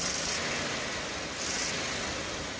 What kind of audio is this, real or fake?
real